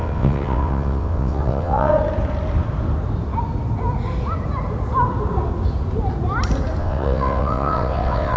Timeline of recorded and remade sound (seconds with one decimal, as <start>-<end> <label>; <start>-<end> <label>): 0.0-1.9 remade; 1.9-6.8 recorded; 6.8-8.4 remade